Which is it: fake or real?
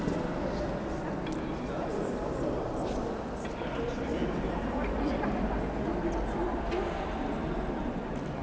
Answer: real